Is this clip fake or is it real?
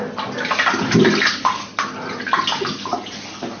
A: real